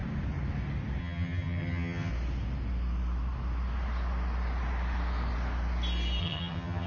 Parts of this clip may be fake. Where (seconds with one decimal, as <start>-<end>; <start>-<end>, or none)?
1.0-2.1; 6.2-6.9